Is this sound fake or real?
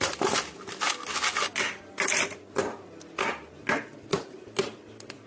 real